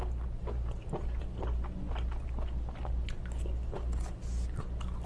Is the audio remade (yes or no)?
no